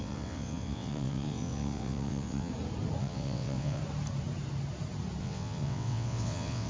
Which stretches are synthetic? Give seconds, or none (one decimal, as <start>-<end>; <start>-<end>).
0.0-2.5; 3.0-3.8; 5.2-6.7